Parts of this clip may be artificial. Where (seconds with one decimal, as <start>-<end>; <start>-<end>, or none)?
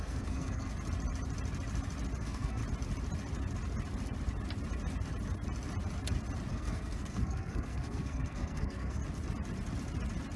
0.0-0.7; 2.2-2.6; 6.5-9.0